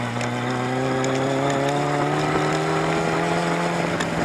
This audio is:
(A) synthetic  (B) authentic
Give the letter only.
B